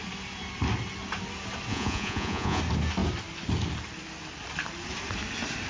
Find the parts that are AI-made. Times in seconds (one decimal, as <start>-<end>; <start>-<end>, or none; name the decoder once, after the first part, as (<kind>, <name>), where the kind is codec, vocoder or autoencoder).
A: 1.7-2.6 (vocoder, Vocos)